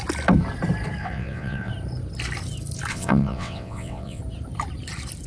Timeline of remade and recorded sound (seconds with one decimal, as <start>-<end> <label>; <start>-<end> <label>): 0.0-1.0 recorded; 1.0-1.7 remade; 1.7-2.9 recorded; 2.9-4.2 remade; 4.2-5.3 recorded